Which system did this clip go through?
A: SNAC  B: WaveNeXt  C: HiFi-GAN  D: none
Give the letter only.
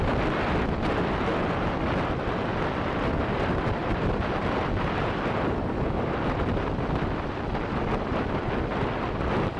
D